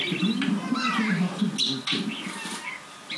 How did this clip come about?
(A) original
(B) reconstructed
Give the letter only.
A